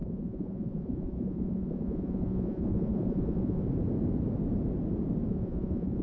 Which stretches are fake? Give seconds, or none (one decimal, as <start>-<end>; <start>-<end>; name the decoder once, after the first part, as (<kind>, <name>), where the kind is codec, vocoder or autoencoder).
0.0-3.6 (vocoder, Vocos); 5.3-6.0